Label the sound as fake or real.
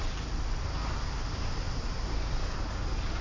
real